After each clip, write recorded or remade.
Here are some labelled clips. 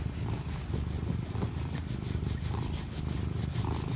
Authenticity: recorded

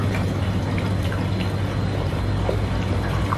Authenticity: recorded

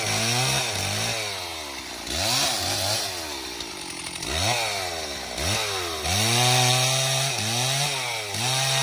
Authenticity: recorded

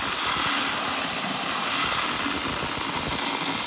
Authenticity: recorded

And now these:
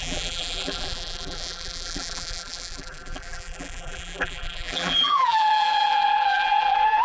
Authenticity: remade